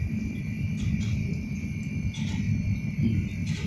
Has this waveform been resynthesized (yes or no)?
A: yes